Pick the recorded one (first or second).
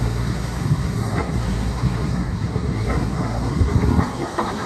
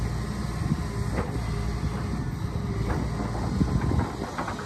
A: second